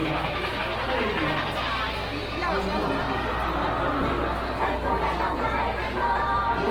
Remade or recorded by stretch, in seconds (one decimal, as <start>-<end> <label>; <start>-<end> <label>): 0.0-0.6 remade; 0.6-6.7 recorded